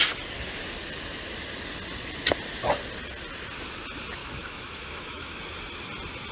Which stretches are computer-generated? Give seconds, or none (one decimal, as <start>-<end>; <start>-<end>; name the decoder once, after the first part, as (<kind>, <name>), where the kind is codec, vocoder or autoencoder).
4.2-5.4 (autoencoder, DAC-VAE)